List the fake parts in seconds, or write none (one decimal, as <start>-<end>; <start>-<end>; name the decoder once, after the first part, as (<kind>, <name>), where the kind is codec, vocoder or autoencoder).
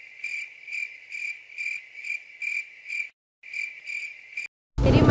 none